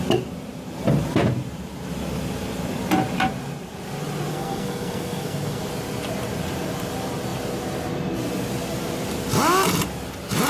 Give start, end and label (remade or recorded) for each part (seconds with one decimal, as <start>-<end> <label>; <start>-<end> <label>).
0.0-4.3 recorded; 4.3-5.6 remade; 5.6-10.5 recorded